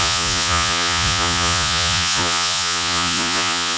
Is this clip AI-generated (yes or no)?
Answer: yes